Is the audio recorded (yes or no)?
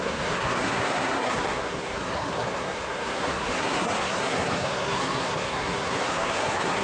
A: no